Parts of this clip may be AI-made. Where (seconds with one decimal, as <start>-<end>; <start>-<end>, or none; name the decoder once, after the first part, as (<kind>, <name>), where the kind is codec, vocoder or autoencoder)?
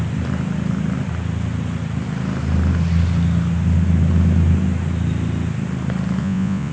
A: 6.2-6.7 (vocoder, Vocos)